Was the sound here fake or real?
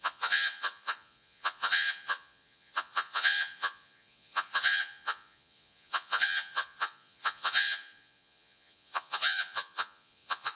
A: fake